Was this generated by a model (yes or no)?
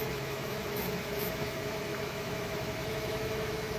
yes